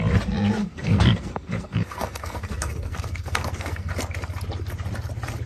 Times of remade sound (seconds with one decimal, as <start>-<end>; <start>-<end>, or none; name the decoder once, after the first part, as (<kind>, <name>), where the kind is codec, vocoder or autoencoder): 0.6-3.9 (codec, SNAC)